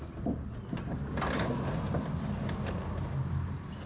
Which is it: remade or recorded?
recorded